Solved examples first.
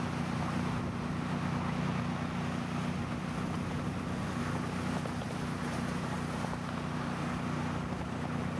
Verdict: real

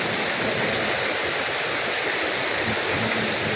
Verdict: real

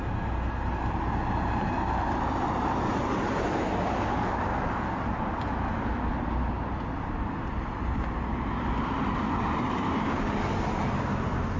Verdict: real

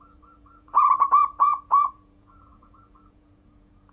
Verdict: fake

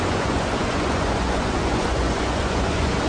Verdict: fake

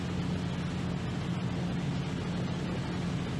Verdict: real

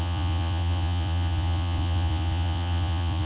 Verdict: fake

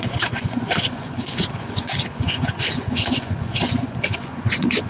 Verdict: fake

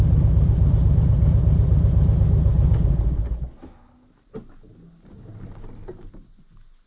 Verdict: real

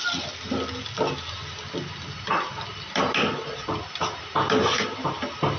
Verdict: real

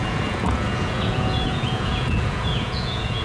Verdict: fake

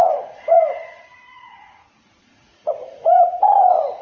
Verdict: fake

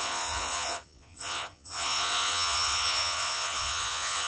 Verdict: fake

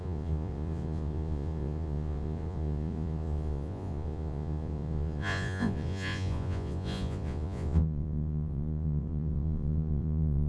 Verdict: fake